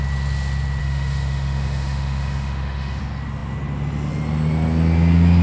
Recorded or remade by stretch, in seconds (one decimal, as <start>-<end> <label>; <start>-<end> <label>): 0.0-0.8 recorded; 0.8-3.0 remade; 3.0-5.4 recorded